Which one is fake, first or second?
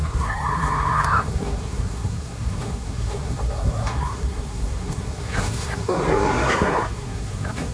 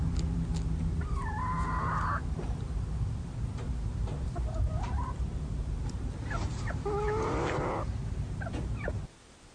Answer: first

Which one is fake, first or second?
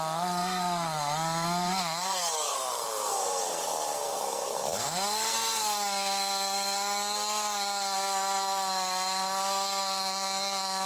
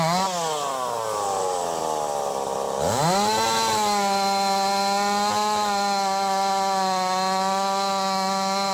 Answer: first